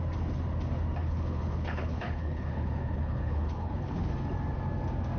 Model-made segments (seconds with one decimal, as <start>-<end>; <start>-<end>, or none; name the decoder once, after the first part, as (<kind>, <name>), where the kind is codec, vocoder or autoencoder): 1.0-4.1 (codec, HILCodec)